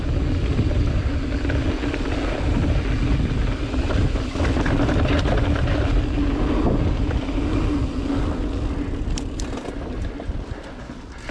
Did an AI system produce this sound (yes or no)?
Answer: no